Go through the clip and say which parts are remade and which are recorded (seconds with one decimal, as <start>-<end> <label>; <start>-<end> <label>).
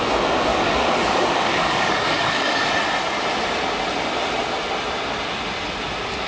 0.0-0.5 recorded; 0.5-2.7 remade; 2.7-6.3 recorded